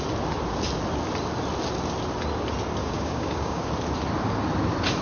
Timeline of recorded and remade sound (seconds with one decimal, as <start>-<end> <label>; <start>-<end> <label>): 0.0-2.8 recorded; 2.8-3.7 remade; 3.7-5.0 recorded